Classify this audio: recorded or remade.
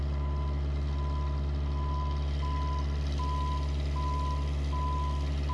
remade